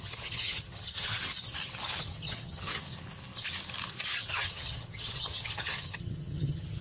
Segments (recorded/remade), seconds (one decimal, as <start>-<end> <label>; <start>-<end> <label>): 0.0-1.2 remade; 1.2-2.0 recorded; 2.0-2.7 remade; 2.7-4.3 recorded; 4.3-6.8 remade